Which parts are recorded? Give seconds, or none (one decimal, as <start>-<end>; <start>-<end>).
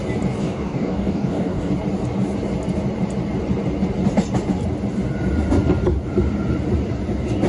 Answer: 0.0-0.4; 1.7-7.5